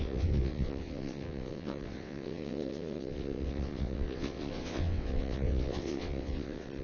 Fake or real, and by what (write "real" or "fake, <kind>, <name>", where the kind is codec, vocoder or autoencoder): fake, vocoder, WaveNeXt